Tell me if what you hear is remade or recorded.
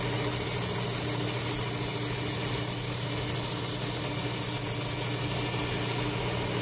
recorded